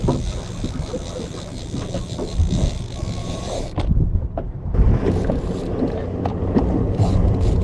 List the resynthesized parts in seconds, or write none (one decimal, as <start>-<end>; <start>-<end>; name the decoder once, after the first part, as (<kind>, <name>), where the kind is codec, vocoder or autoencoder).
3.2-5.7 (vocoder, BigVGAN v2); 6.3-7.6